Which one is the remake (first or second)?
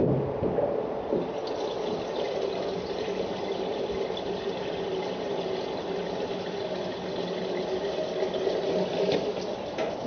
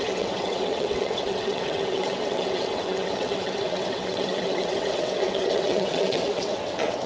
second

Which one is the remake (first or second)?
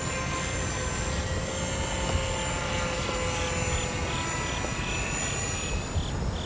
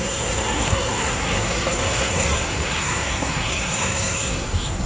second